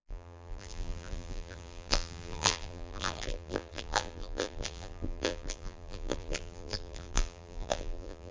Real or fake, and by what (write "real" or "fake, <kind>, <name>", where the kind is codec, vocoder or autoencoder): fake, vocoder, BigVGAN v2